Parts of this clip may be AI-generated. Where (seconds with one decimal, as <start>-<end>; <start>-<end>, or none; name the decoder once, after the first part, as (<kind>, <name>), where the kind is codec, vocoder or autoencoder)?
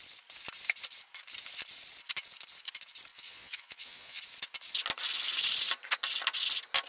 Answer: 3.1-4.2 (vocoder, Vocos)